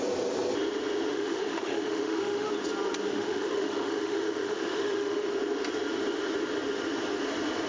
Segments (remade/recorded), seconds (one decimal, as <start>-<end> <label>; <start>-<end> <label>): 0.0-1.1 recorded; 1.1-2.5 remade; 2.5-3.1 recorded; 3.1-5.3 remade; 5.3-7.7 recorded